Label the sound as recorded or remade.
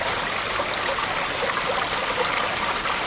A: recorded